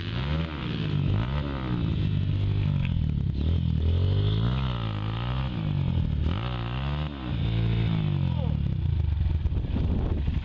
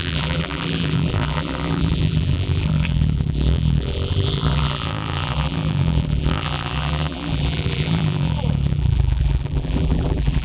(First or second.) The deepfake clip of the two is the second